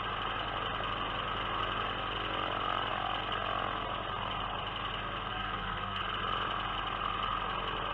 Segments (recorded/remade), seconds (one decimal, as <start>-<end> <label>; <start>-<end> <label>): 0.0-5.3 recorded; 5.3-6.0 remade; 6.0-7.9 recorded